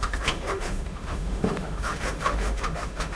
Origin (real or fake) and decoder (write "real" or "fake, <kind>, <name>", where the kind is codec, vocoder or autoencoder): fake, autoencoder, DAC-VAE